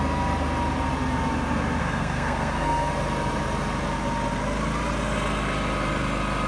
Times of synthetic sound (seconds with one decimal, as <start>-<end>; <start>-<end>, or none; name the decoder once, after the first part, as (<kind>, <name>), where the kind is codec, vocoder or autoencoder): 1.8-2.9 (codec, SNAC)

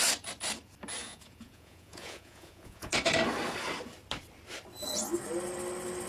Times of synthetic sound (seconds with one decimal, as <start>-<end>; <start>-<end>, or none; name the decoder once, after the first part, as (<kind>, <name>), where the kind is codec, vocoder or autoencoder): 1.0-2.9 (vocoder, Vocos)

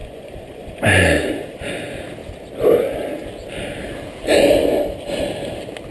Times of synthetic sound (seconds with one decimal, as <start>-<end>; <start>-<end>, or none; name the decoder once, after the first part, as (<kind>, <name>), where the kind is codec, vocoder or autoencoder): 0.0-0.8 (vocoder, Vocos)

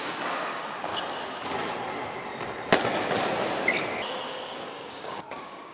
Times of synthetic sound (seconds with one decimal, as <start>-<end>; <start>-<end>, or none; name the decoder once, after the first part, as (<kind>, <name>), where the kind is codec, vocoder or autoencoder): 0.0-0.9 (codec, DAC); 4.3-5.7

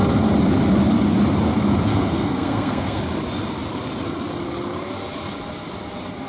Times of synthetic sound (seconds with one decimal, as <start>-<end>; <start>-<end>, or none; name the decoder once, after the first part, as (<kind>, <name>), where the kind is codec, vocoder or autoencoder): 1.9-3.0 (codec, SNAC)

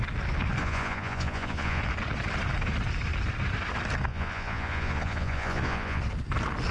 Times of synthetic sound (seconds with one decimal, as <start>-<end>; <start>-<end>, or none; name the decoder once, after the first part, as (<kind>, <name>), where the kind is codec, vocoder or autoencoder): 0.6-1.8 (vocoder, Vocos); 4.1-6.0

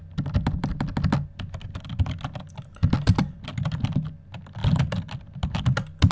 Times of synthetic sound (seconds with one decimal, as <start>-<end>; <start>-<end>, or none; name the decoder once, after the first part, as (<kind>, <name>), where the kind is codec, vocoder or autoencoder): none